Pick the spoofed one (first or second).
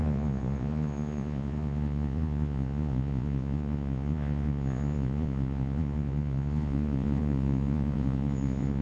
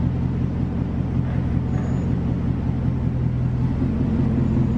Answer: first